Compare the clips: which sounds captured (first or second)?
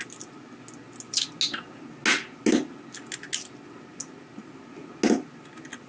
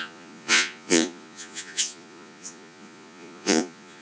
first